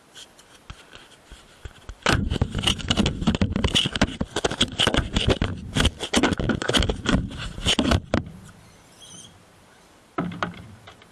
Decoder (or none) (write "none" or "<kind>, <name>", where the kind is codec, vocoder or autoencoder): vocoder, BigVGAN v2